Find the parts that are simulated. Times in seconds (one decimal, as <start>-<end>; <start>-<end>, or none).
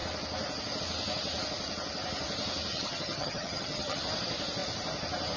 2.7-4.0